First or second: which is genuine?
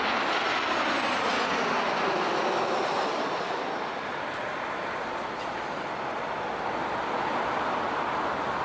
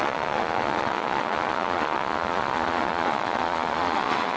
first